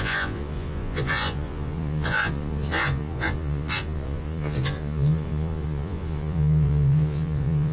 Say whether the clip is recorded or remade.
remade